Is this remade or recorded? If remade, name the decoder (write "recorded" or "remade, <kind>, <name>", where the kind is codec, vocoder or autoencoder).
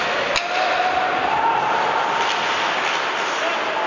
recorded